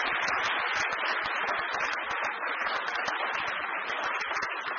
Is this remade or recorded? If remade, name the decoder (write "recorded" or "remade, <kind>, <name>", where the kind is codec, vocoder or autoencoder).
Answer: recorded